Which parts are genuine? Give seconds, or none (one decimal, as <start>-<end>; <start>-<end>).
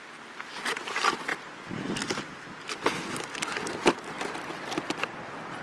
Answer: 0.0-5.6